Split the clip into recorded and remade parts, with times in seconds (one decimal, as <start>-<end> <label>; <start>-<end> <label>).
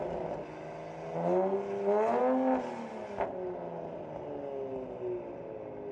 0.0-5.9 recorded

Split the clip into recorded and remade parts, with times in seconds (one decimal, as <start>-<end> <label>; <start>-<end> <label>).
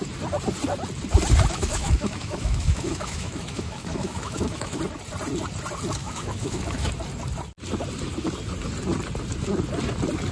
0.0-1.6 recorded; 1.6-4.8 remade; 4.8-6.0 recorded; 6.0-6.9 remade; 6.9-10.3 recorded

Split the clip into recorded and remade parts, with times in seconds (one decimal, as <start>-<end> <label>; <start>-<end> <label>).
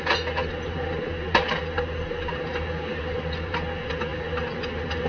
0.0-5.1 recorded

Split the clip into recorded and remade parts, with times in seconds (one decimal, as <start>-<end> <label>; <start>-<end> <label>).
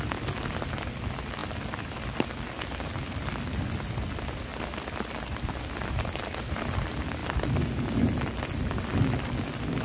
0.0-9.8 recorded